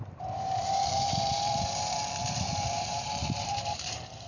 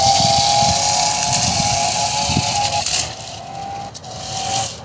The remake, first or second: first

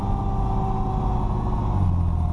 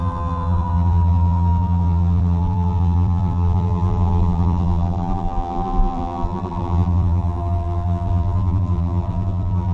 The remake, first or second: second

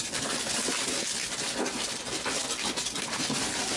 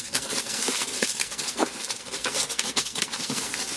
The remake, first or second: second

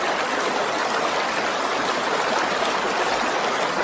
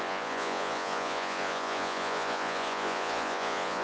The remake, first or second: second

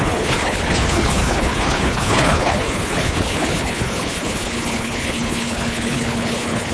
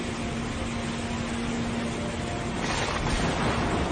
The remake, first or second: first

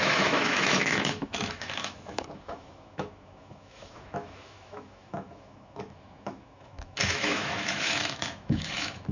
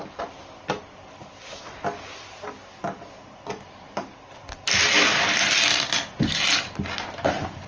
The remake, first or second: first